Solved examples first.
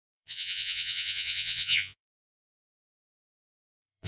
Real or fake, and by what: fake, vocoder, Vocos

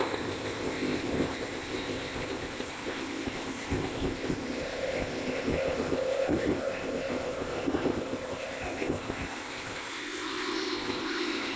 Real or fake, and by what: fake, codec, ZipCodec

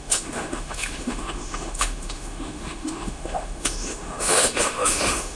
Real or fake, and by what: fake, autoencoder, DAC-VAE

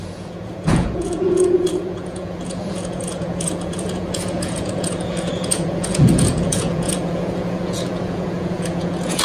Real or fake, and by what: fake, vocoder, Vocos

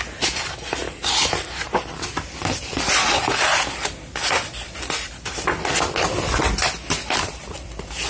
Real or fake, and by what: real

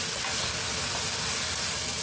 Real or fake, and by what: real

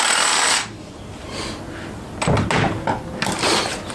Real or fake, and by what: real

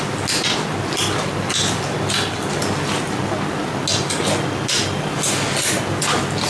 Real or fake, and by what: real